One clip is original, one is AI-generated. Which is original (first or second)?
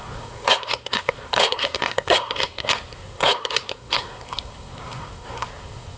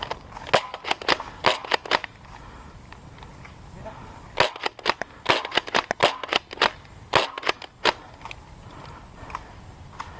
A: second